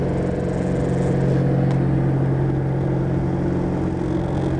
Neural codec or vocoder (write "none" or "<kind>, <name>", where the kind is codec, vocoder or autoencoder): none